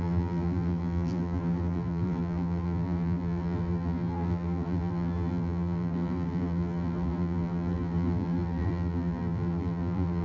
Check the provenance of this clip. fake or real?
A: fake